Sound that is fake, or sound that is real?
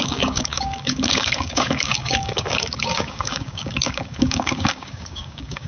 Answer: fake